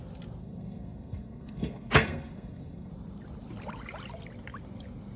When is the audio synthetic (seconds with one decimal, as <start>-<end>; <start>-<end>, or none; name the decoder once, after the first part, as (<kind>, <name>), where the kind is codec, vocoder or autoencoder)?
0.4-2.9 (codec, SNAC)